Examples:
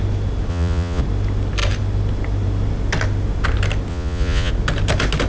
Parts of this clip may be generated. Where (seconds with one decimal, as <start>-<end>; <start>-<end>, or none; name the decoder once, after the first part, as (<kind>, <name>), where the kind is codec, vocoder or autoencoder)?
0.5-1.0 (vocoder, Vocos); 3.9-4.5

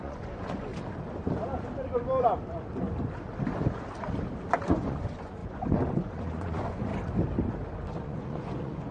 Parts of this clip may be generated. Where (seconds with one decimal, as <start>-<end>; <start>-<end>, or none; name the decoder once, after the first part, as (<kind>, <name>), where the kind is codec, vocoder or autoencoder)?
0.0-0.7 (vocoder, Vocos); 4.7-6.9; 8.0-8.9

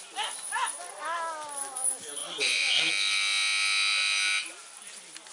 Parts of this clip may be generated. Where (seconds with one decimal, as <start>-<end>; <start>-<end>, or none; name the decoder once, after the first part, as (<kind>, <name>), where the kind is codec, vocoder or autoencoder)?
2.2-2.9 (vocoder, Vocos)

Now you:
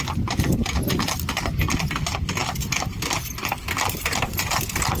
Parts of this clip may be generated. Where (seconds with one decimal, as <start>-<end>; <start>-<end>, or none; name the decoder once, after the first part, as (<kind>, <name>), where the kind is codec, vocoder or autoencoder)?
none

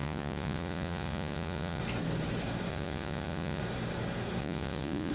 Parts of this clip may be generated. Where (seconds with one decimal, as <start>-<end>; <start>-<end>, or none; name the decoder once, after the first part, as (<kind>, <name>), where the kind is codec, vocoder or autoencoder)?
0.0-1.8 (vocoder, Vocos); 2.7-3.6; 4.4-5.1